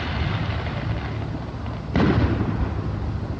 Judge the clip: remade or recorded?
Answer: recorded